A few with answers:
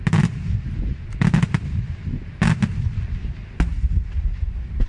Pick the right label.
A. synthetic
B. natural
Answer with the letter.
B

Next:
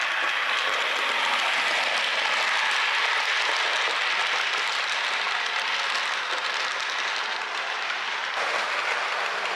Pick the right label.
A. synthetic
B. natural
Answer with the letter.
B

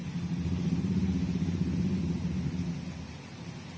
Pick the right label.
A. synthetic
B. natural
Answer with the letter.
B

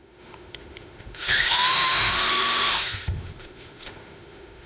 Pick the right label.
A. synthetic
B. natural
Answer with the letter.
A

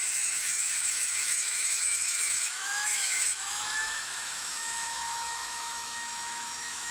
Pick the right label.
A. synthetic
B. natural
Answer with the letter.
A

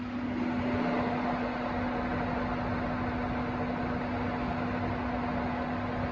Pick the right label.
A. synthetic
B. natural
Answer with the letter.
B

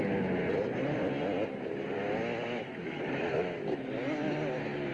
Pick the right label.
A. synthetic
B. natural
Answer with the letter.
B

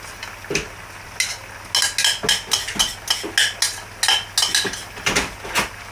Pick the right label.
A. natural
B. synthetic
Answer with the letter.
A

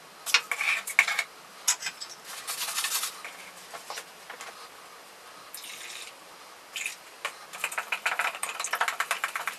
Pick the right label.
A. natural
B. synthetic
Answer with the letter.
A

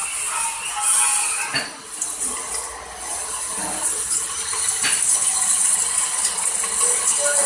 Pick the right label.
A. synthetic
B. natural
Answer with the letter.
B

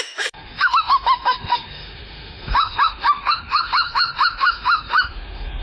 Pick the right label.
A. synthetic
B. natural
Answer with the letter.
A